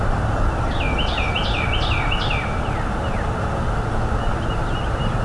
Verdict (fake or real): real